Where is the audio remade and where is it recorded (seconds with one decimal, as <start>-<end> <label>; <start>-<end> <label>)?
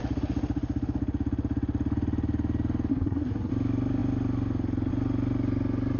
0.0-2.9 recorded; 2.9-3.5 remade; 3.5-6.0 recorded